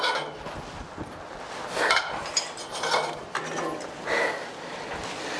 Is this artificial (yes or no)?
no